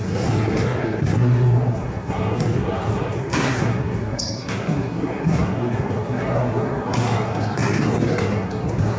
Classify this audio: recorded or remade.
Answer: remade